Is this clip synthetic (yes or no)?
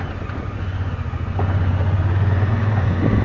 yes